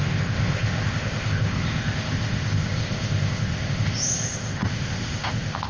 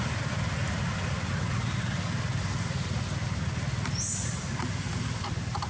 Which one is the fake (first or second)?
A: first